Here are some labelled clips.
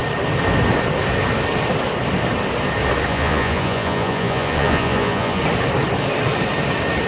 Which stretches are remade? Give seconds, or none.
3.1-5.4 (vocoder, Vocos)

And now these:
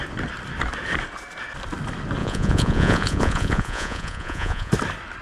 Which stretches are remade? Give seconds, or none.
2.2-4.7 (vocoder, Vocos)